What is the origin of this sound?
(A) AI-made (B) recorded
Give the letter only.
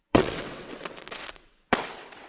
A